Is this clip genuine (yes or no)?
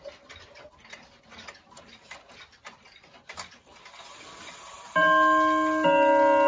yes